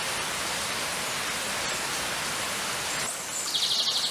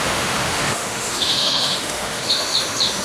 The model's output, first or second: second